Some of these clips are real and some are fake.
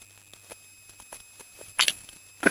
real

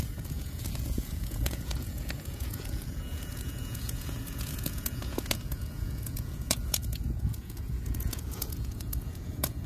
fake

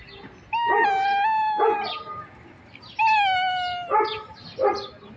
real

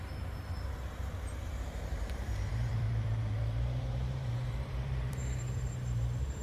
fake